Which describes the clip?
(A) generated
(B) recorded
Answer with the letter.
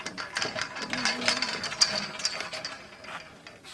B